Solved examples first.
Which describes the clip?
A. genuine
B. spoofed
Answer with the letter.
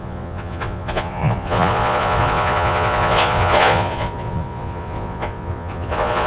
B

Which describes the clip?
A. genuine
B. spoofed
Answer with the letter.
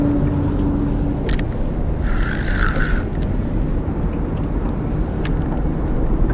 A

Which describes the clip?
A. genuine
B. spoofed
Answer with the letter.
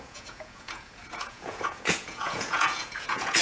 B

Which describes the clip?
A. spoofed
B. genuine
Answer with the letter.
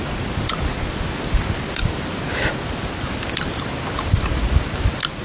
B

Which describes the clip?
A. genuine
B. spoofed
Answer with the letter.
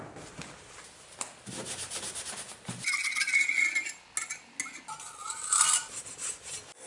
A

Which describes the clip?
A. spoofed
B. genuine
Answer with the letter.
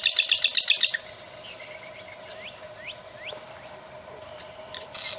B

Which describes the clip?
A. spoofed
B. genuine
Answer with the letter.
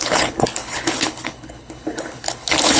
A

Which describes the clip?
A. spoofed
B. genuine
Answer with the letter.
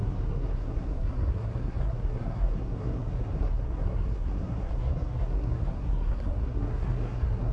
A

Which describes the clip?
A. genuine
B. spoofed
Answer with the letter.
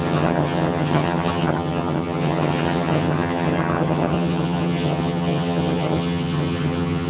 B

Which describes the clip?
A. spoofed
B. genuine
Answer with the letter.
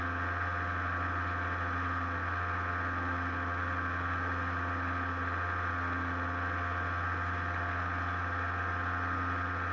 B